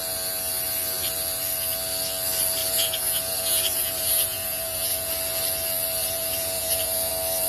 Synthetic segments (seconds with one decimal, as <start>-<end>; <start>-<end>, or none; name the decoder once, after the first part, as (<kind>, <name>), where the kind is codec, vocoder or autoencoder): 2.6-5.1 (vocoder, Vocos); 6.0-7.1